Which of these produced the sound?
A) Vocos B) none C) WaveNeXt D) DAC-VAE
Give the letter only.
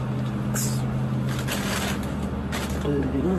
B